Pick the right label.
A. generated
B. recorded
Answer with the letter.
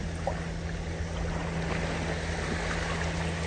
B